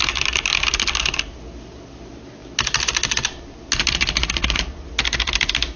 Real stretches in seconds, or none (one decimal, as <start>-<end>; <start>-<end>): 0.0-5.8